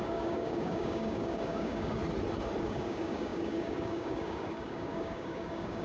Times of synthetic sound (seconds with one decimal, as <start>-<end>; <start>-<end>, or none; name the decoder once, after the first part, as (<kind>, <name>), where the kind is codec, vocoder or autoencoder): 0.0-2.0 (codec, DAC); 2.6-5.8